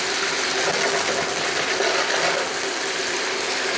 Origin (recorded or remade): recorded